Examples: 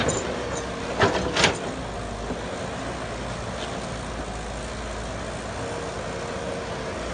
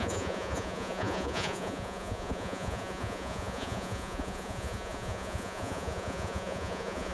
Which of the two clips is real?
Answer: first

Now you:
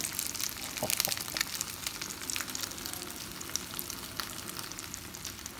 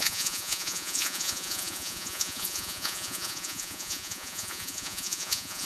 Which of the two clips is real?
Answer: first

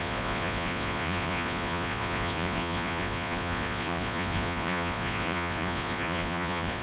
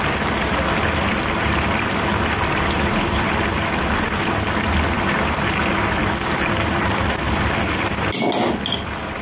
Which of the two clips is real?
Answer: second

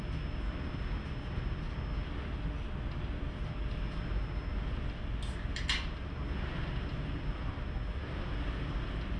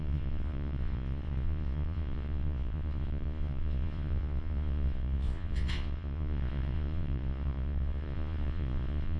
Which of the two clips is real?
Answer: first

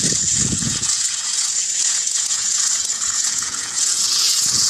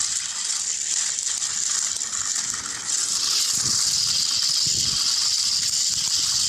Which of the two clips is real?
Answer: second